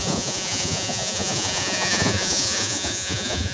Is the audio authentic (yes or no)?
no